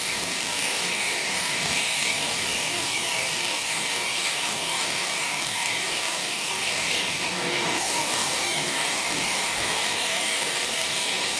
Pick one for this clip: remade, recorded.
remade